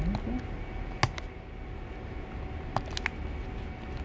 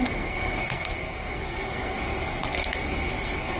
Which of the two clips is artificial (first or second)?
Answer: second